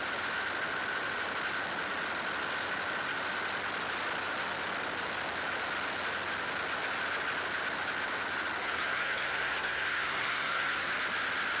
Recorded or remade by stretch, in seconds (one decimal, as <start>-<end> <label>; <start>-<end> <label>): 0.0-8.6 recorded; 8.6-10.9 remade; 10.9-11.6 recorded